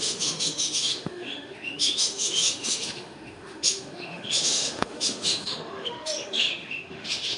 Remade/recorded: remade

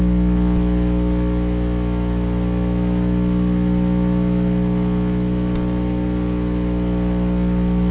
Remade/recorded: recorded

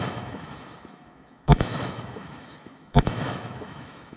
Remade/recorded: remade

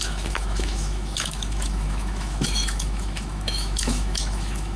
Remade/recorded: remade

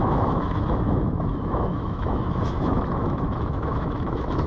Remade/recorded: remade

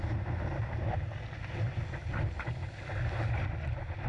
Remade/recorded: recorded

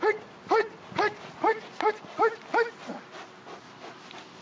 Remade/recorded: recorded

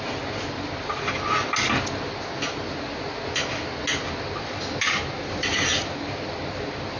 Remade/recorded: recorded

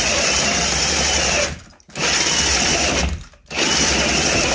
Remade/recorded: recorded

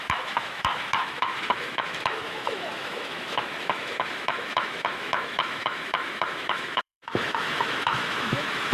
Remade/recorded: remade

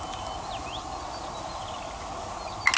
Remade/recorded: recorded